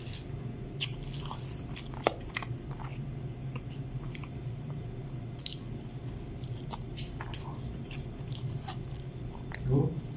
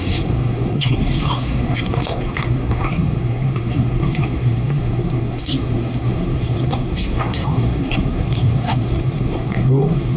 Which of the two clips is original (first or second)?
first